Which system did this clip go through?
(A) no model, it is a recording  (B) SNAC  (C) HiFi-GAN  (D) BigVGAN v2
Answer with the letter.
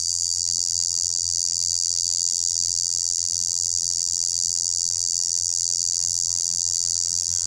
D